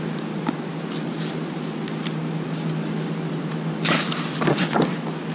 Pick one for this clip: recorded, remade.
recorded